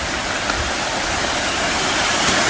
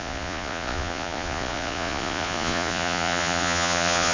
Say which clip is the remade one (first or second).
second